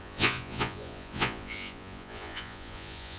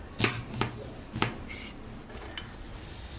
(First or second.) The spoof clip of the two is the first